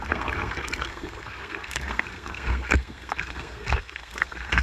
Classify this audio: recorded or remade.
remade